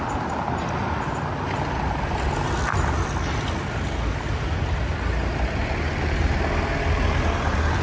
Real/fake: real